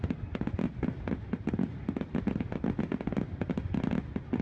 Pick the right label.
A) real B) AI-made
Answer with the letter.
A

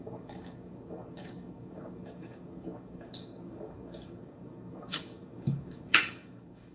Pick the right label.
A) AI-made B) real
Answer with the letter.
A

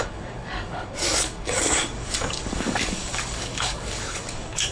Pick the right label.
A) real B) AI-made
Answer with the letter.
B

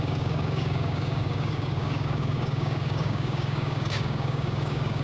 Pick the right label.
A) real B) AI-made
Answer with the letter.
B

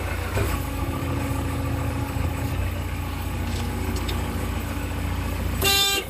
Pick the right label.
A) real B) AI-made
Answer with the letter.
B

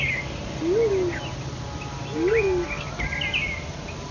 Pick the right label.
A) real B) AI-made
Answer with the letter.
A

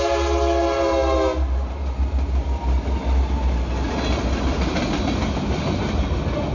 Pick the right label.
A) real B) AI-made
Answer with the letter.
A